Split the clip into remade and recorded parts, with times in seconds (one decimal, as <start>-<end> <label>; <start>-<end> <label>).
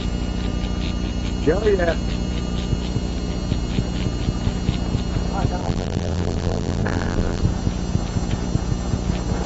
0.0-5.6 recorded; 5.6-7.4 remade; 7.4-9.5 recorded